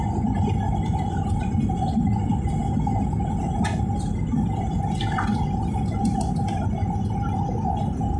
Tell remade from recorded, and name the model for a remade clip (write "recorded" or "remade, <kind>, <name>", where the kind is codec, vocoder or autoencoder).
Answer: recorded